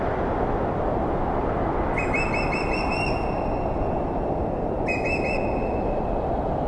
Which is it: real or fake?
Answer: real